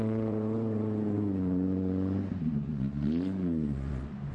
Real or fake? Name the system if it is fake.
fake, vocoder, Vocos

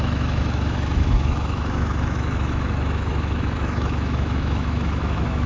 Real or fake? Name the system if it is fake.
fake, autoencoder, DAC-VAE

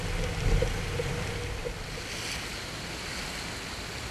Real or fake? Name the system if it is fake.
real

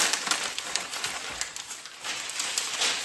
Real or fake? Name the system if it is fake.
real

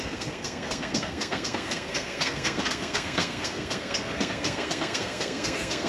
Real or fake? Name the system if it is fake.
fake, codec, SNAC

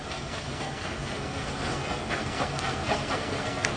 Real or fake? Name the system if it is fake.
fake, codec, SNAC